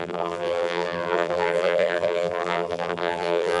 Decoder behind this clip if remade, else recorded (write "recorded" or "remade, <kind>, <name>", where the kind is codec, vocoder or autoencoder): remade, vocoder, BigVGAN v2